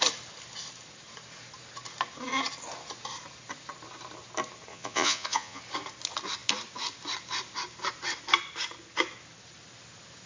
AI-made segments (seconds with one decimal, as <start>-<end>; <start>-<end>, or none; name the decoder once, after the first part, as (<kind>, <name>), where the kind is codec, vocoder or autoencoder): 4.7-5.6 (vocoder, Vocos)